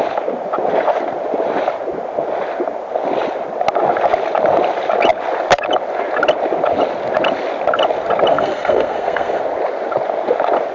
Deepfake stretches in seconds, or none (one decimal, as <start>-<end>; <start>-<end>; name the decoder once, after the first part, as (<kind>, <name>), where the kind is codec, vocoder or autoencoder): 8.3-9.4 (codec, SNAC)